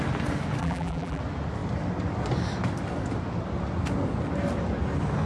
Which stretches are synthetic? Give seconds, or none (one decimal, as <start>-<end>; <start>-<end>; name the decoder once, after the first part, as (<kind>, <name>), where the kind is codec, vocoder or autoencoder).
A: 0.6-1.2 (vocoder, BigVGAN v2)